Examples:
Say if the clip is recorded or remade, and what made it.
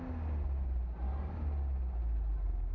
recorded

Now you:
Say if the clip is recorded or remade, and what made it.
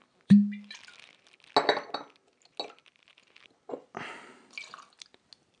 recorded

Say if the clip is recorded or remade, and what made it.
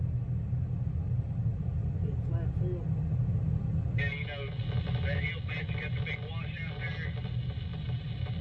recorded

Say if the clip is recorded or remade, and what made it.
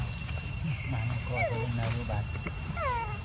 recorded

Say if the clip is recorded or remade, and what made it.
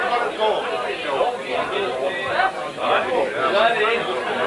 recorded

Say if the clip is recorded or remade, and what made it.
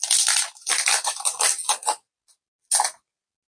recorded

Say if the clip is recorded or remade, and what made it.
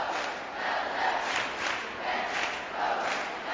recorded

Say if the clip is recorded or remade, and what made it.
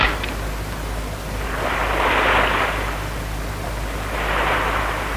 recorded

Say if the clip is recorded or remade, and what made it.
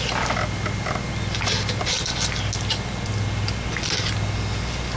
recorded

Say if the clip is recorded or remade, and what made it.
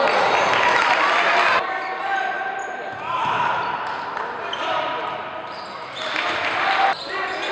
recorded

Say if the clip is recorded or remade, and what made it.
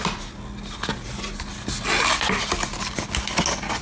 recorded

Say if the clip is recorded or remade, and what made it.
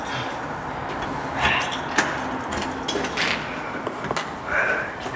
recorded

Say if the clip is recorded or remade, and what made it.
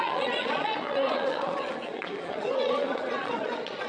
remade, vocoder, Vocos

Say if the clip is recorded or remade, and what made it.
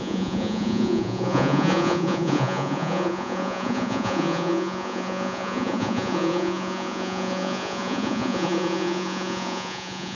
remade, vocoder, Vocos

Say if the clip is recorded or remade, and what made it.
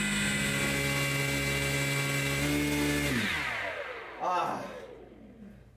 recorded